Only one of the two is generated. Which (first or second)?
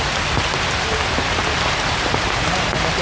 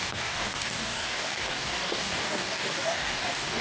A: second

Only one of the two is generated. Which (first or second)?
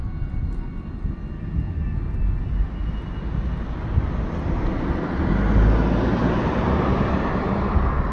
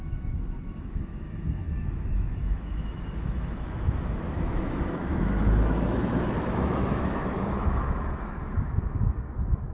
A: second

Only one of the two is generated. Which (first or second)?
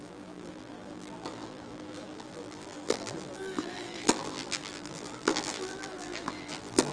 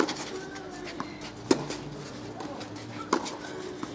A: first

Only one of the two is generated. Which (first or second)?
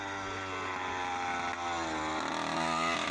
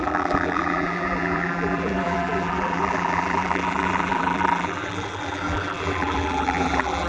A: second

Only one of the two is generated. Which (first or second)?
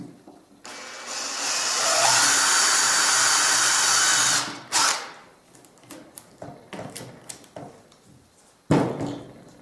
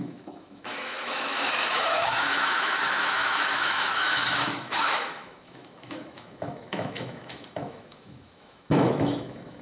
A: second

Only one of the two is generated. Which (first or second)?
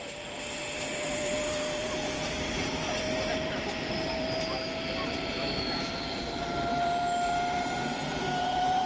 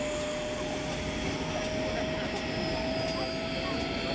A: first